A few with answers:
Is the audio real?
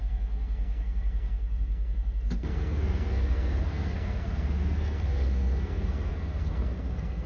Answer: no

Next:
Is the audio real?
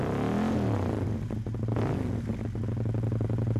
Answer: yes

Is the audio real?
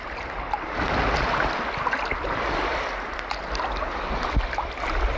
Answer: yes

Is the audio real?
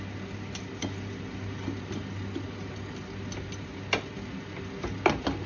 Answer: yes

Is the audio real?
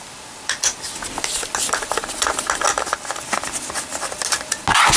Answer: yes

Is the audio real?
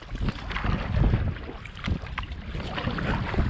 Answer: yes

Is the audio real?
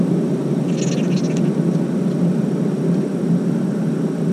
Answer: yes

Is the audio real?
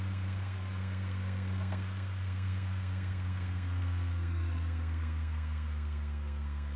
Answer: no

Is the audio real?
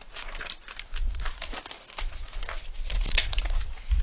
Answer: yes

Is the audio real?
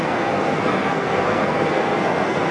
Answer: no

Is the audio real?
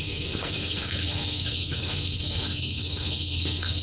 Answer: no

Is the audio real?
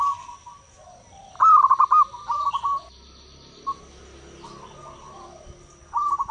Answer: yes